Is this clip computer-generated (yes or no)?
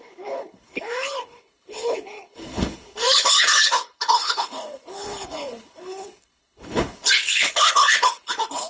yes